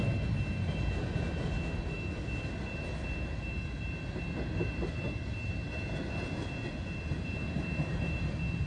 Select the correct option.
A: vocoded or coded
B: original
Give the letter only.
B